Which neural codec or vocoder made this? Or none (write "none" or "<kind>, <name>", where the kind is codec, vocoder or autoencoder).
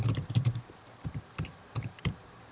vocoder, BigVGAN v2